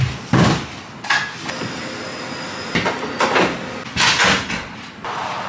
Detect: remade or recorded recorded